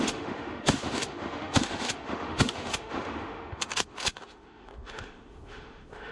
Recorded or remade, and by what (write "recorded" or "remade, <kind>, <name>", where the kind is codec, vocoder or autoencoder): remade, autoencoder, DAC-VAE